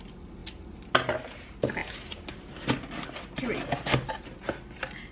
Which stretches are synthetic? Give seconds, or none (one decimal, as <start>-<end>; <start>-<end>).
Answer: none